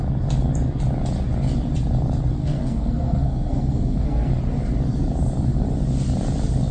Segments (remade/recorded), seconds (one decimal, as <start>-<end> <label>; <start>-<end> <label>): 0.0-2.4 recorded; 2.4-4.3 remade; 4.3-6.7 recorded